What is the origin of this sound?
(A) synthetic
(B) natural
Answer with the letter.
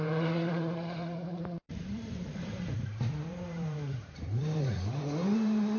A